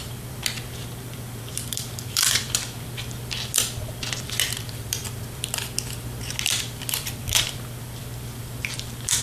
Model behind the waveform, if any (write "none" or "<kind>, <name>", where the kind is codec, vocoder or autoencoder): vocoder, BigVGAN v2